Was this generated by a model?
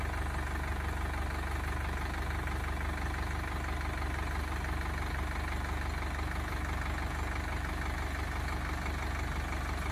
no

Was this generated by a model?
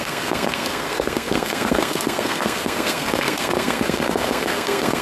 yes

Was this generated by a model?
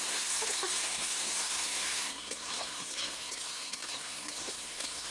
yes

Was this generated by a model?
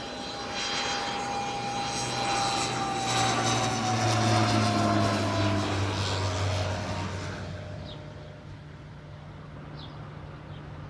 no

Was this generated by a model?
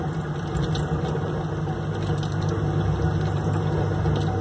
no